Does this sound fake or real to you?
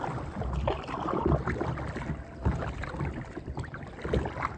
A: real